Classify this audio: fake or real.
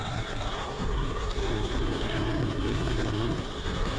fake